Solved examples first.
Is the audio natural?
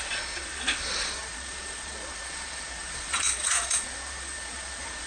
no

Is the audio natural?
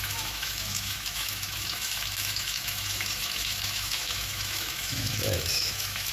no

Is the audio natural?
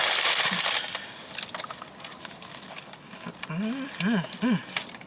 yes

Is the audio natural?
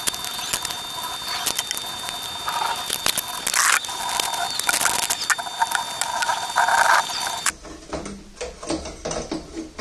yes